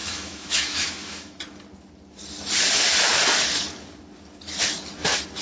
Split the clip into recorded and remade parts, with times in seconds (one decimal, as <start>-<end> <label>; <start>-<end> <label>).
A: 0.0-1.4 remade; 1.4-5.4 recorded